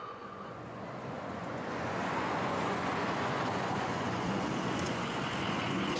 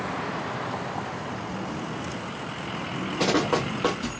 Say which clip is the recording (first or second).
second